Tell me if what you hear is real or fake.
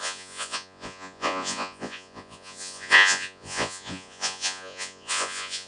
fake